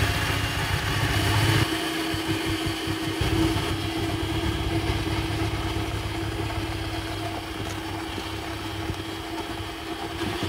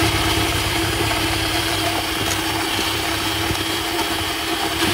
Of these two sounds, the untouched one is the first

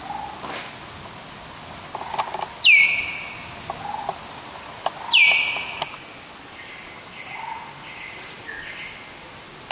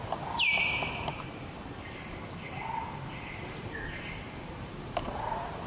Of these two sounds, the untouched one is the first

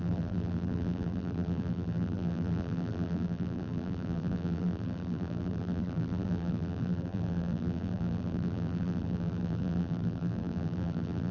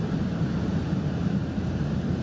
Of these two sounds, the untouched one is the second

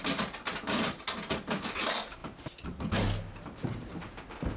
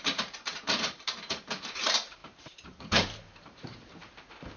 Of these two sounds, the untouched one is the first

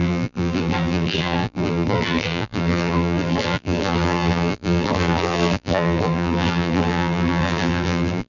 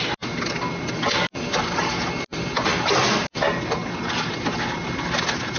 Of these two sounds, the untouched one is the second